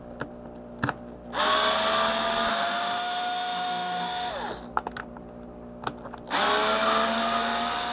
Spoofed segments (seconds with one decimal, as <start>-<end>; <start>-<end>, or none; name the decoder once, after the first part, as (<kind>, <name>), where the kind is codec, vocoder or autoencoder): 2.5-4.3 (autoencoder, DAC-VAE)